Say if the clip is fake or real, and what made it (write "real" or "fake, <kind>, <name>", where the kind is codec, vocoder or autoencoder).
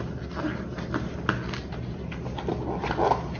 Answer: real